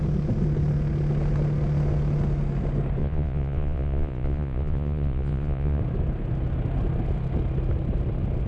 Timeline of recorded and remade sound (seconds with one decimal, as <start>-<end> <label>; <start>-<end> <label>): 0.0-3.0 recorded; 3.0-5.8 remade; 5.8-8.5 recorded